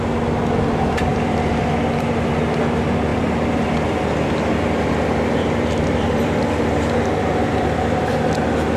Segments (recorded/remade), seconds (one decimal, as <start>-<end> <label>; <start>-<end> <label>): 0.0-1.1 recorded; 1.1-1.7 remade; 1.7-3.1 recorded; 3.1-6.4 remade; 6.4-7.5 recorded; 7.5-8.1 remade; 8.1-8.8 recorded